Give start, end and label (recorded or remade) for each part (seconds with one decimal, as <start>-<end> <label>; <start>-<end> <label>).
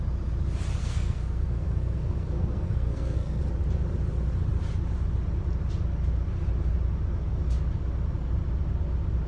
0.0-0.8 recorded; 0.8-3.4 remade; 3.4-9.3 recorded